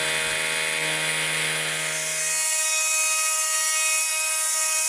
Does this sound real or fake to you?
real